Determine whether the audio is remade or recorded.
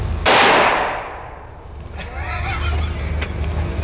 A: recorded